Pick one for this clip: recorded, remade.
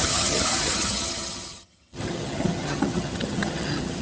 remade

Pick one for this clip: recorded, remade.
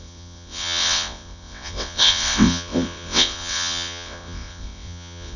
remade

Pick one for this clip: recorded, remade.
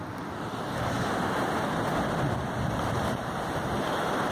recorded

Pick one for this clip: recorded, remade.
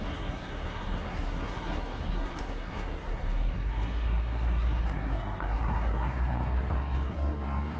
remade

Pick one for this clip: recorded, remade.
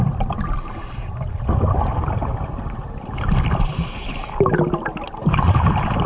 recorded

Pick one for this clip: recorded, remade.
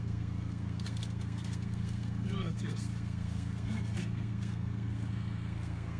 remade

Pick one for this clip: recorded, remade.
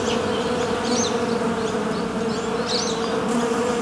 recorded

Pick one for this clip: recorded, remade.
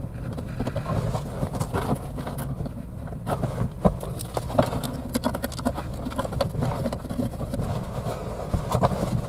recorded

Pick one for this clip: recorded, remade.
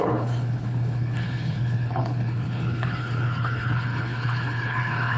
remade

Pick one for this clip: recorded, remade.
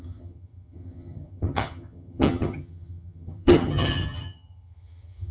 remade